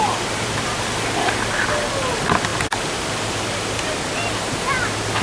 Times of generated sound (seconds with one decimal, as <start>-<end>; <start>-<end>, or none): none